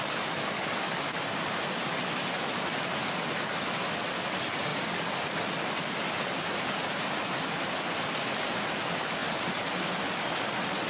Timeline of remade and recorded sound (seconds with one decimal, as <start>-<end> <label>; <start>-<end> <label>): 0.0-10.9 recorded